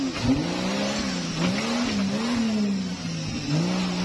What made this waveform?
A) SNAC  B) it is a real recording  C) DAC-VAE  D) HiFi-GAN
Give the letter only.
B